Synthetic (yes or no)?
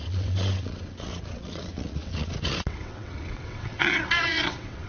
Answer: yes